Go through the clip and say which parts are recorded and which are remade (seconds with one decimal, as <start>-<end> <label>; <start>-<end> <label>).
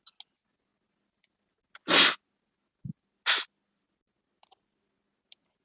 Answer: 0.0-5.6 recorded